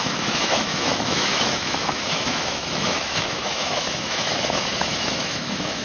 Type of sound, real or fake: fake